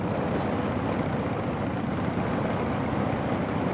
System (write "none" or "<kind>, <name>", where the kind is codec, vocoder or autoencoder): none